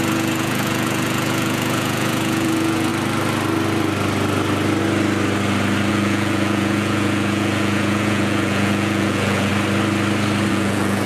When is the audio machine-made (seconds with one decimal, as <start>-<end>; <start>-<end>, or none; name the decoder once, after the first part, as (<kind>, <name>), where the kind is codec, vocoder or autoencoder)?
0.0-2.9 (vocoder, Vocos); 5.9-9.5; 10.5-11.1